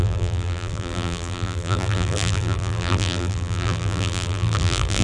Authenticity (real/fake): fake